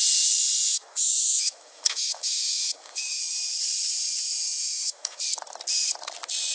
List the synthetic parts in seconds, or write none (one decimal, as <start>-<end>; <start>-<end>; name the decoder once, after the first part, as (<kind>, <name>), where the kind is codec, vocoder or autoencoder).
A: 0.7-3.2 (autoencoder, DAC-VAE); 4.6-5.2